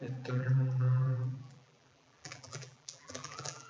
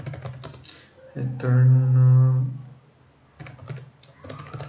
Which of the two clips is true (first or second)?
second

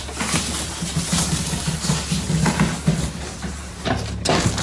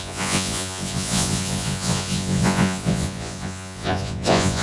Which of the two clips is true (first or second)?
first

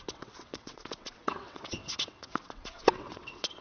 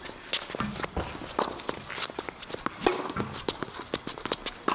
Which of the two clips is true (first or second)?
second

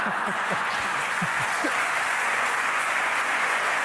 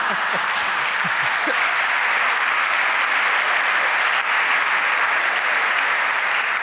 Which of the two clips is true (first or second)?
second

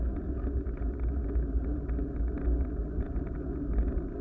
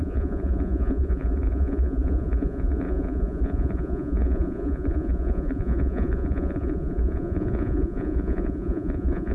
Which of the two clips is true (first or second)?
first